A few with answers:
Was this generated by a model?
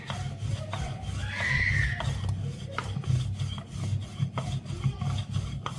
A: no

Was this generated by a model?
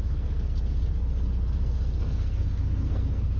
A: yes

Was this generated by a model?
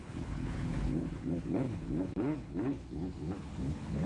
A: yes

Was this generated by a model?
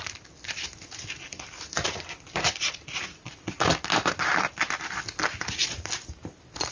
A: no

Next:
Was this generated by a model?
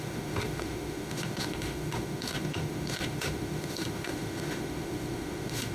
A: yes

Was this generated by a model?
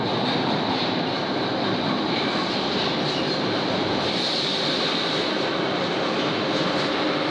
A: no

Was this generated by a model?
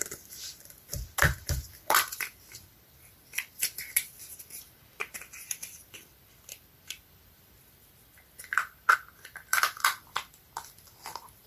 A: yes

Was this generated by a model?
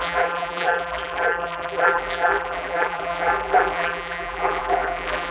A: yes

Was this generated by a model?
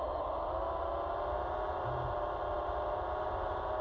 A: no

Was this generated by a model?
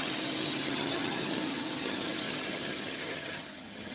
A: yes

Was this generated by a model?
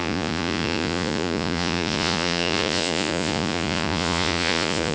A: yes